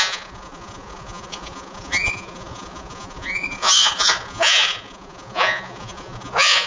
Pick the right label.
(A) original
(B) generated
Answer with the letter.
B